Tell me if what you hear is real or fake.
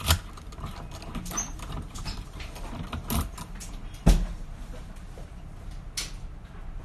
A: real